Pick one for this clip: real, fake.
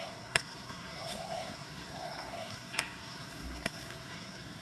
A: fake